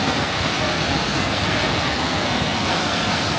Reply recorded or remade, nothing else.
remade